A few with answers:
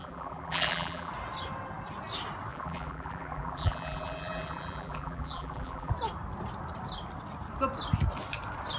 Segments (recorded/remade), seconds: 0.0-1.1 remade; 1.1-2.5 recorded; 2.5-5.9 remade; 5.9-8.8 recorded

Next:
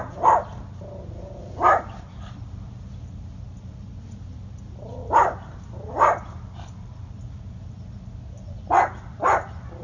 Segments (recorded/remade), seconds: 0.0-9.8 recorded

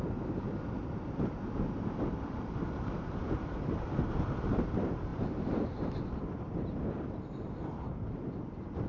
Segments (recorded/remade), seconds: 0.0-8.9 remade

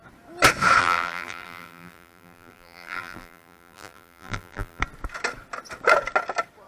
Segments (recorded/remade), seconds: 0.0-0.8 recorded; 0.8-4.8 remade; 4.8-6.7 recorded

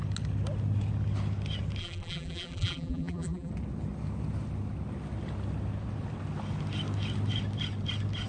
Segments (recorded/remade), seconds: 0.0-1.8 recorded; 1.8-3.5 remade; 3.5-8.3 recorded

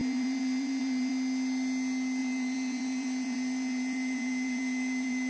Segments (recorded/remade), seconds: 0.0-1.1 remade; 1.1-2.2 recorded; 2.2-5.3 remade

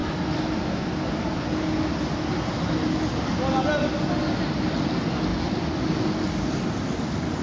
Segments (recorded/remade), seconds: 0.0-7.4 recorded

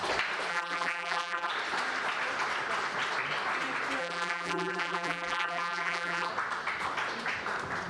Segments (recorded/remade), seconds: 0.0-0.5 recorded; 0.5-1.5 remade; 1.5-4.0 recorded; 4.0-6.3 remade; 6.3-7.9 recorded